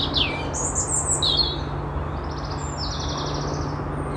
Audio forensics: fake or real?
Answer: real